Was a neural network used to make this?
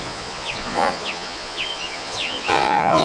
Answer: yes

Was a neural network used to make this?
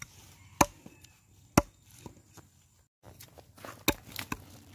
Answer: no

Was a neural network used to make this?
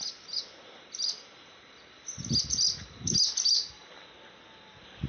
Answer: no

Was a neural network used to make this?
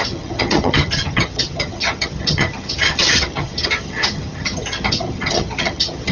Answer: yes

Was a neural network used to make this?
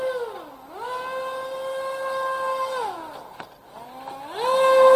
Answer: no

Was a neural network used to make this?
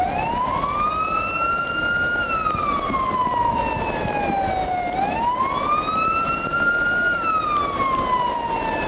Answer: no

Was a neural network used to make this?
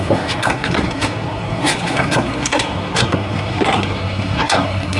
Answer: yes